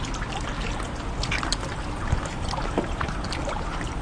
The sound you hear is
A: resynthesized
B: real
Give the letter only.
B